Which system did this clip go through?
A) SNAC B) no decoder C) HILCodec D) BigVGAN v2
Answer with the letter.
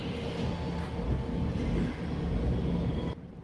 B